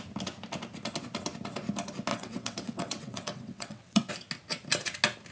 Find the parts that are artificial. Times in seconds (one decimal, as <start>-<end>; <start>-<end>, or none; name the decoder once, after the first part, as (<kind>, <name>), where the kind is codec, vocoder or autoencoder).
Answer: 2.1-4.1 (vocoder, WaveNeXt)